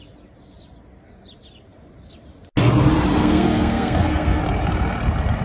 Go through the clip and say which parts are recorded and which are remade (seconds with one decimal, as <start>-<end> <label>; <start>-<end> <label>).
0.0-3.2 recorded; 3.2-4.4 remade; 4.4-5.4 recorded